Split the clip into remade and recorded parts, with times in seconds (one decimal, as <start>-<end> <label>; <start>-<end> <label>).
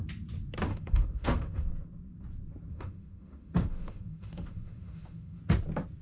0.0-0.7 recorded; 0.7-1.7 remade; 1.7-2.7 recorded; 2.7-5.4 remade; 5.4-6.0 recorded